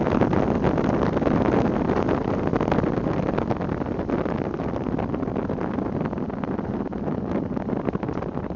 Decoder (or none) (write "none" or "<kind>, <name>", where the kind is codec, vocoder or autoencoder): none